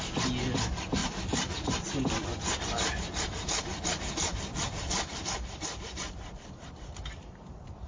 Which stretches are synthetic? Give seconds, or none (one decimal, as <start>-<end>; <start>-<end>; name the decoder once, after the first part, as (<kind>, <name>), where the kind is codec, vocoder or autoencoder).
1.0-1.5 (vocoder, BigVGAN v2); 4.5-7.9